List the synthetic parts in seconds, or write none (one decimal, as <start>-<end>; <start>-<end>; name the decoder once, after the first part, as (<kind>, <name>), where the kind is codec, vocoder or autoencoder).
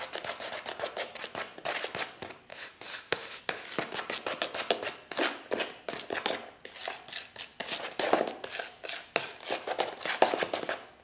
2.5-3.4 (autoencoder, DAC-VAE)